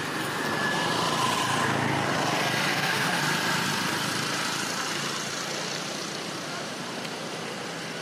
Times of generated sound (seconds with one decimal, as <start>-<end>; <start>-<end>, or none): 2.7-3.2